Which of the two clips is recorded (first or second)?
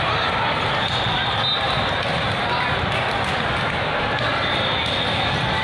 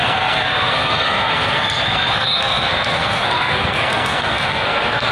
first